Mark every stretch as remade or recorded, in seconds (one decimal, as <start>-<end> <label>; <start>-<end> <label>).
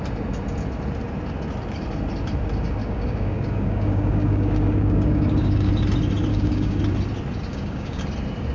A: 0.0-2.8 recorded; 2.8-5.7 remade; 5.7-6.3 recorded; 6.3-6.8 remade; 6.8-7.5 recorded; 7.5-8.0 remade; 8.0-8.5 recorded